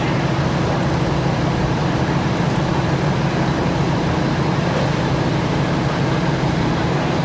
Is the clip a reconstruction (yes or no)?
no